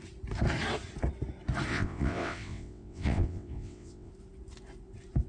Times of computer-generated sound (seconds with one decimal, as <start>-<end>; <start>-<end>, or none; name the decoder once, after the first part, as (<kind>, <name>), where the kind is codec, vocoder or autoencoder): 1.7-4.1 (vocoder, WaveNeXt)